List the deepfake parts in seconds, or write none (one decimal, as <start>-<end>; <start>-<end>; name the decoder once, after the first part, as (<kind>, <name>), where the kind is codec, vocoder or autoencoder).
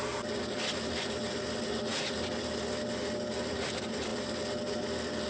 none